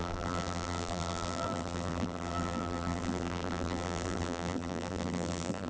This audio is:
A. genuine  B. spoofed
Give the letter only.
B